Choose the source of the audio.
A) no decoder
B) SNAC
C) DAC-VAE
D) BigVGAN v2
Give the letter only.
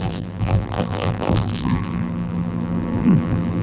D